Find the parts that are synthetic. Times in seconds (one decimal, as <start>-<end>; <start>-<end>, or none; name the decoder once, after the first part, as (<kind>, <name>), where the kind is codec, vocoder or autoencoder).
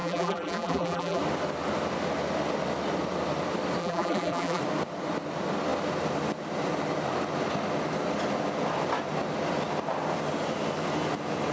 0.0-1.2 (vocoder, BigVGAN v2); 3.8-4.6